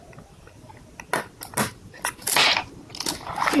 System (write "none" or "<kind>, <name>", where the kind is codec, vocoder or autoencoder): none